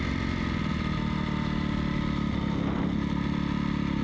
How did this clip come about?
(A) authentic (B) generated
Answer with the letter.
A